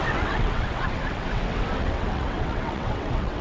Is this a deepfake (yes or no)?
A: yes